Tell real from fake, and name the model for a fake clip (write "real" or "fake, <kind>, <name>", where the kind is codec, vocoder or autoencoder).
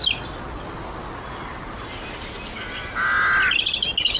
real